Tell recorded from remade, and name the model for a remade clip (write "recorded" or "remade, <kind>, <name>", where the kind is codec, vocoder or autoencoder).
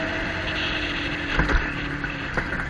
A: recorded